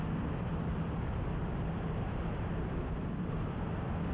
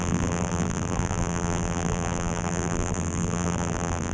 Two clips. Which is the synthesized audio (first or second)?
second